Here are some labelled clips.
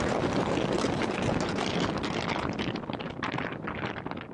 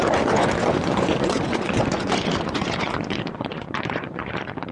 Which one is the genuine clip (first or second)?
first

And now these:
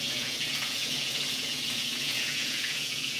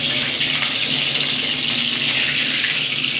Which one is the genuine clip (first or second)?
second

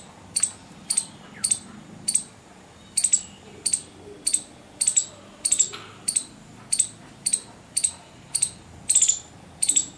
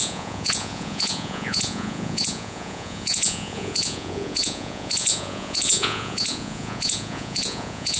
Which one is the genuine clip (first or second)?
first